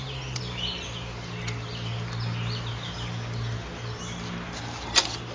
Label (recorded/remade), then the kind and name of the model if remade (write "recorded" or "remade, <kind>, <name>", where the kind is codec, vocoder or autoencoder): recorded